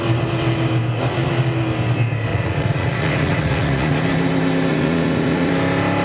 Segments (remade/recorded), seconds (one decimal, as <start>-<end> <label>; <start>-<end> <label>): 0.0-2.3 recorded; 2.3-4.0 remade; 4.0-4.7 recorded; 4.7-5.5 remade; 5.5-6.0 recorded